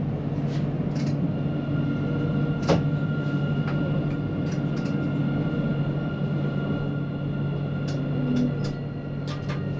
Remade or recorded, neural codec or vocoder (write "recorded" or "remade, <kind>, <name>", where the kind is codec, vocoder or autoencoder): recorded